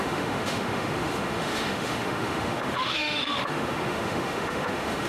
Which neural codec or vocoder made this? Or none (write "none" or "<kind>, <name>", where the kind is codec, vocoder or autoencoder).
autoencoder, DAC-VAE